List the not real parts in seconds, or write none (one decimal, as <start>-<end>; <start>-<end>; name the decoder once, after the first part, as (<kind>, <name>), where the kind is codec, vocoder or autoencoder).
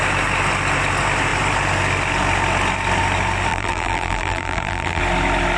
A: 3.5-5.0 (vocoder, BigVGAN v2)